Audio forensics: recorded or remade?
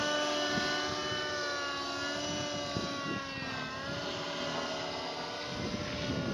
recorded